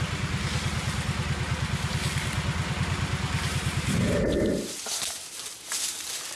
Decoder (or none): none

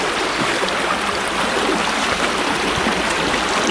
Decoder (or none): none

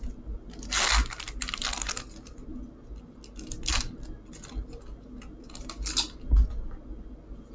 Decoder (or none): none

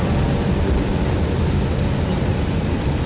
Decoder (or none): none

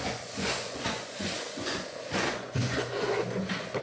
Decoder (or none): vocoder, Vocos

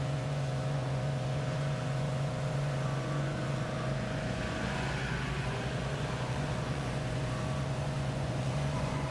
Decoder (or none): vocoder, Vocos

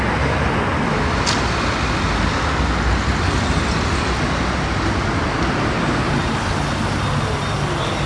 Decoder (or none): none